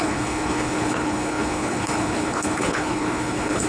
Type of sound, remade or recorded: remade